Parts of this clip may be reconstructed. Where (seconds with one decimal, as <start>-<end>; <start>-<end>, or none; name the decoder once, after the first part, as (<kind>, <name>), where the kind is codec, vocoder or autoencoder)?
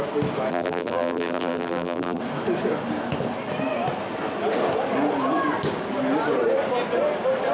0.5-2.2 (vocoder, BigVGAN v2)